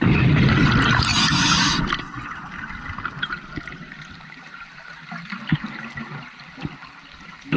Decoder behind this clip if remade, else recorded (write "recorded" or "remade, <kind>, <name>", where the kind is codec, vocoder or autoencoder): recorded